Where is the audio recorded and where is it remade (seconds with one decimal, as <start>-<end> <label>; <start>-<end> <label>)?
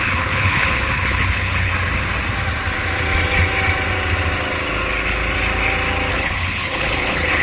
0.0-1.7 remade; 1.7-6.1 recorded; 6.1-7.4 remade